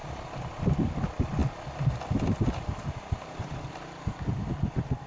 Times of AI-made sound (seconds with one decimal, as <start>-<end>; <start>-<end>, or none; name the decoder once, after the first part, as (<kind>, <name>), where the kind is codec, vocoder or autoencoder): none